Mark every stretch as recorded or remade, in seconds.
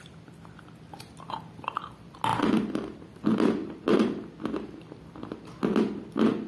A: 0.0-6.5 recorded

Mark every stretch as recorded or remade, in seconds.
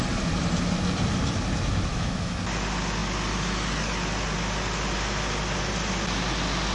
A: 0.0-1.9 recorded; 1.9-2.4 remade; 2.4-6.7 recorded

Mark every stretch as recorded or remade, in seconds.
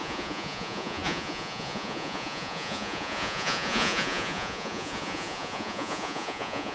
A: 0.0-6.7 remade